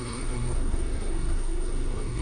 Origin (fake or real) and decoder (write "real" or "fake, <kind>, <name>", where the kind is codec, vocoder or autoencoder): fake, codec, SNAC